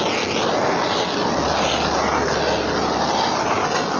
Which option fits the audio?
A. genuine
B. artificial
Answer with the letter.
A